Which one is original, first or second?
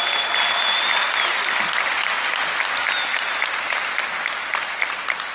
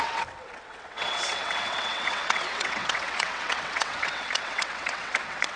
first